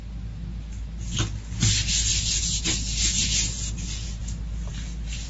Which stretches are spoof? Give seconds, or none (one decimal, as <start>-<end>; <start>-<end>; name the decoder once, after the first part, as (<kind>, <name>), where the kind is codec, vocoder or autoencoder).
none